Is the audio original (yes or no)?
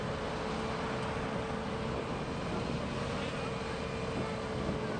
yes